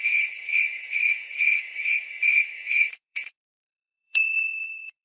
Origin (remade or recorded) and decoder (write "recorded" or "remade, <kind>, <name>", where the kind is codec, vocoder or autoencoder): remade, vocoder, Vocos